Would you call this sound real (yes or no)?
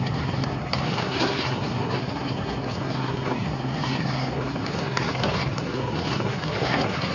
no